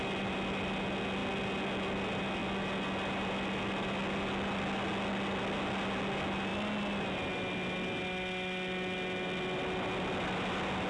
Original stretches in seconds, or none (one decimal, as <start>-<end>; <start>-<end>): 0.0-10.9